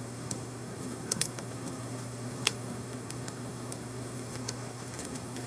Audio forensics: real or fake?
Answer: fake